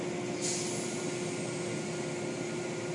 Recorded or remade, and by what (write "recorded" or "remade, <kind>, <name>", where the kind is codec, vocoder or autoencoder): recorded